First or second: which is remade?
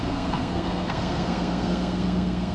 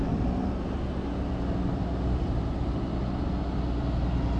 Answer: first